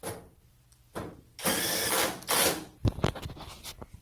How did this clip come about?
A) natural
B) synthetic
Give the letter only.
A